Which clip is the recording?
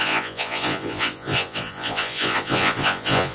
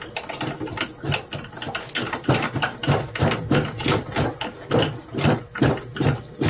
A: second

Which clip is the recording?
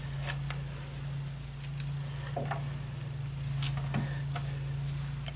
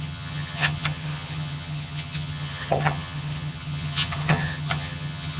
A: first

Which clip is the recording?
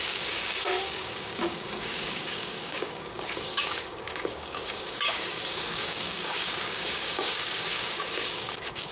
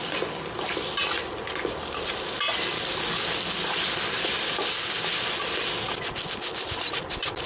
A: second